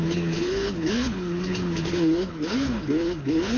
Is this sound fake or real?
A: fake